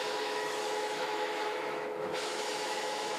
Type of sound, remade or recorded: remade